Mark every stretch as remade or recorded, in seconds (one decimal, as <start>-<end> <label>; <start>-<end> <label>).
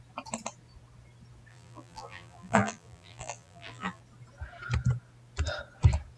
0.0-1.5 recorded; 1.5-4.0 remade; 4.0-6.2 recorded